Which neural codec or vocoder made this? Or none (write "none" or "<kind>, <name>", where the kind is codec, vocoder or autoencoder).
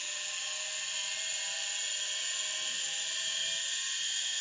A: none